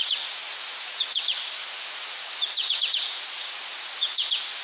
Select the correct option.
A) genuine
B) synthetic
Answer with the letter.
B